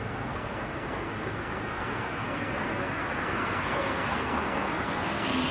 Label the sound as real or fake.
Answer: fake